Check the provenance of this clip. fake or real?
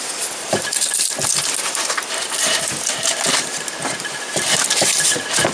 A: fake